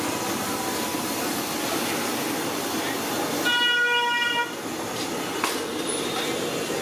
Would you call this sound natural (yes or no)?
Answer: yes